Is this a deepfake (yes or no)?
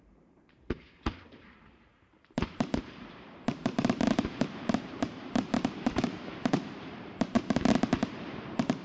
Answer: yes